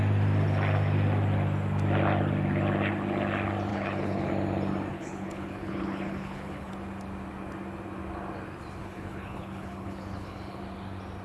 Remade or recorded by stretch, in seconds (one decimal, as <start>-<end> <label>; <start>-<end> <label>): 0.0-3.7 recorded; 3.7-4.3 remade; 4.3-4.9 recorded; 4.9-6.7 remade; 6.7-8.8 recorded; 8.8-10.6 remade; 10.6-11.2 recorded